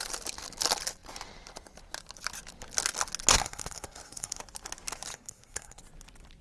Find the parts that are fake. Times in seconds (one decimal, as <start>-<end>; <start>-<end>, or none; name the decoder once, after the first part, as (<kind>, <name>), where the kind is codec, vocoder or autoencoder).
3.3-4.4 (codec, SNAC); 5.1-5.8